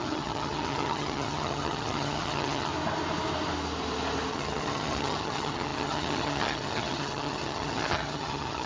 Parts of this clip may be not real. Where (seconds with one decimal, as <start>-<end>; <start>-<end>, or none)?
0.0-2.7; 4.3-8.7